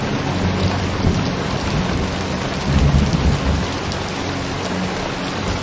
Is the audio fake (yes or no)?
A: no